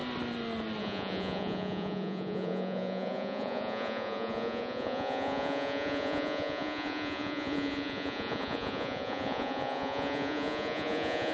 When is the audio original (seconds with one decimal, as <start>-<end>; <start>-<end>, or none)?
0.0-0.8